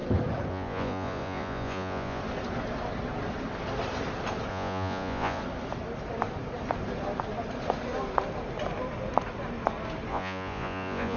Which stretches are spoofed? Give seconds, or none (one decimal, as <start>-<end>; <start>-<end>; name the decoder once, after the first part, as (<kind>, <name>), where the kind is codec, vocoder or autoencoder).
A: 0.5-2.2 (vocoder, Vocos); 4.5-5.4; 10.1-11.2